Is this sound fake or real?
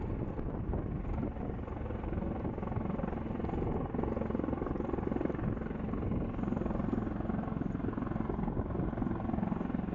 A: real